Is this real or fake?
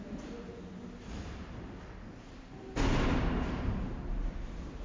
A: real